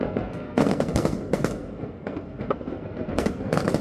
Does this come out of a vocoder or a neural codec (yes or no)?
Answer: yes